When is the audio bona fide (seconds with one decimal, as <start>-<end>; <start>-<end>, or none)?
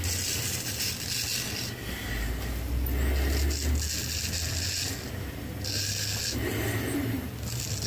0.0-7.9